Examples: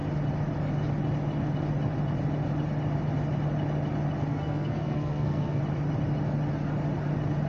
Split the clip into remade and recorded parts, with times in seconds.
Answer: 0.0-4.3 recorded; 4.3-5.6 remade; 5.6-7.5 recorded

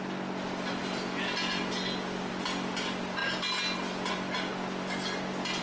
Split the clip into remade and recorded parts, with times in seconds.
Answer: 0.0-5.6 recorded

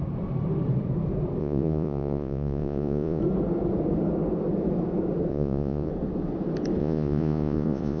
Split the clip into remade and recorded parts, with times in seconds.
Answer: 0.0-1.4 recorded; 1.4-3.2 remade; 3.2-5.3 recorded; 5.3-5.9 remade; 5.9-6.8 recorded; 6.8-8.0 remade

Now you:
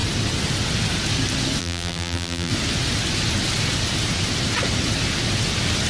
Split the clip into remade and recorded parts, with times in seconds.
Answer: 0.0-1.6 recorded; 1.6-2.5 remade; 2.5-5.9 recorded

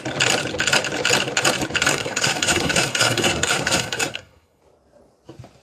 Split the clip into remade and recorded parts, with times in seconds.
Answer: 0.0-1.9 recorded; 1.9-4.6 remade; 4.6-5.6 recorded

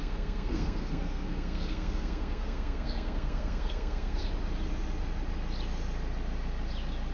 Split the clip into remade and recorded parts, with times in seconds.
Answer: 0.0-4.3 remade; 4.3-7.1 recorded

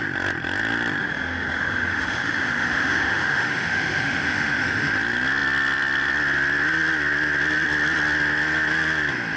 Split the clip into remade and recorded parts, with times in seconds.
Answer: 0.0-1.0 recorded; 1.0-4.9 remade; 4.9-9.4 recorded

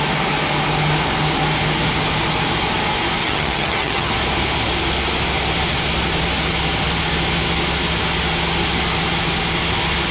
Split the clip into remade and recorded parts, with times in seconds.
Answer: 0.0-3.2 recorded; 3.2-4.1 remade; 4.1-10.1 recorded